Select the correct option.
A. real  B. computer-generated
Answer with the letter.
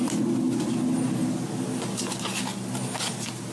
A